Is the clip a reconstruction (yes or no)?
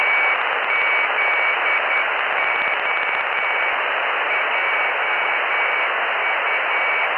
no